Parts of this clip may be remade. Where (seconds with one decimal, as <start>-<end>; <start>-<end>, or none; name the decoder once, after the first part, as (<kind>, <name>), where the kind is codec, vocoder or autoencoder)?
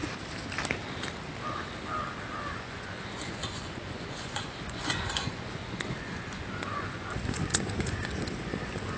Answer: 2.6-9.0 (vocoder, Vocos)